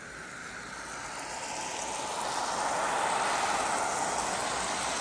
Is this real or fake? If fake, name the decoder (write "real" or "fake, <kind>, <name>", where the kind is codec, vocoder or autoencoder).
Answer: real